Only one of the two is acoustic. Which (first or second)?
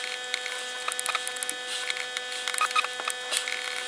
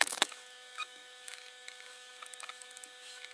first